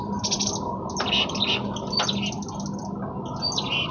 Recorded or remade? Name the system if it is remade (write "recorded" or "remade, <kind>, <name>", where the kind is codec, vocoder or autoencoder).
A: recorded